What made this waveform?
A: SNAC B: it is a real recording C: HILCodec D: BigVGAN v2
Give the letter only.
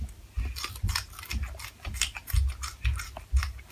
B